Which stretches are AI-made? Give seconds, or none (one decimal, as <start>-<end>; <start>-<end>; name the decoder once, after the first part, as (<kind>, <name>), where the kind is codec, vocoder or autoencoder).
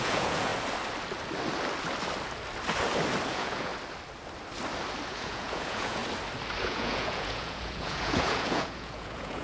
0.0-0.5 (vocoder, Vocos); 3.3-3.7; 5.1-6.0; 6.6-9.4